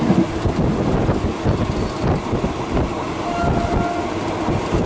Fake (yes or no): no